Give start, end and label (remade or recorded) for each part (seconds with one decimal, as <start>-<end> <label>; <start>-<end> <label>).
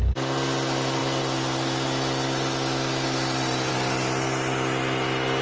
0.0-5.4 recorded